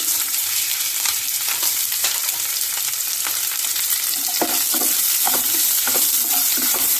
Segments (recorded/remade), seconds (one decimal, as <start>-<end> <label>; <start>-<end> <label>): 0.0-2.2 remade; 2.2-6.4 recorded; 6.4-7.0 remade